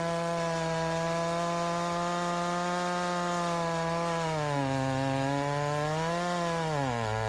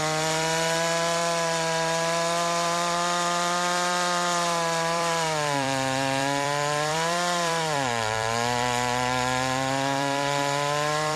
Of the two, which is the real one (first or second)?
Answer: first